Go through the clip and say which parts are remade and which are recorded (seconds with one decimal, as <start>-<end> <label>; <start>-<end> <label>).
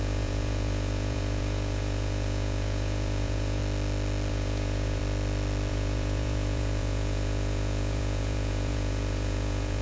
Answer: 0.0-3.6 remade; 3.6-4.3 recorded; 4.3-5.0 remade; 5.0-5.7 recorded; 5.7-9.8 remade